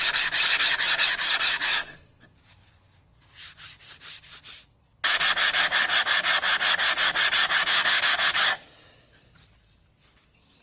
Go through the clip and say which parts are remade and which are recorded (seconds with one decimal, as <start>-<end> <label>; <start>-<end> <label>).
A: 0.0-7.7 recorded; 7.7-8.3 remade; 8.3-10.6 recorded